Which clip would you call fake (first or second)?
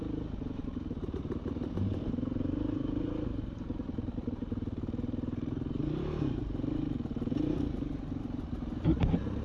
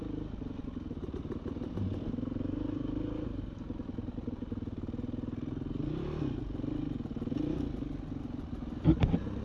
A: first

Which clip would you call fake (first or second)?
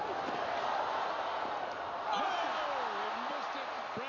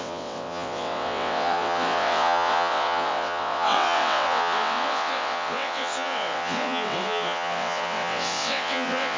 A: second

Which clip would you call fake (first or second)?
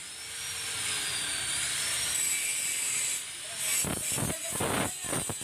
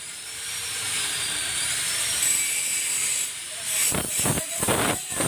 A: second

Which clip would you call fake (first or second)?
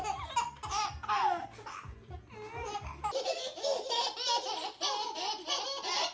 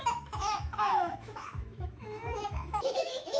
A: second